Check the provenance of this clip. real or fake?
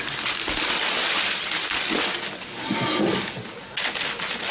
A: real